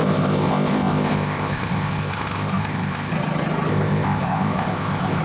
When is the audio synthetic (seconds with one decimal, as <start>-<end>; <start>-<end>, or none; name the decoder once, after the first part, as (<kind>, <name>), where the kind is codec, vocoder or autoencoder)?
0.0-3.1 (codec, ZipCodec); 3.7-5.2